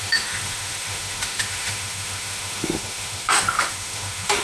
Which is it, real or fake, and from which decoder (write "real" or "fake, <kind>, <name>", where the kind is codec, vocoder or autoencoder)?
fake, autoencoder, DAC-VAE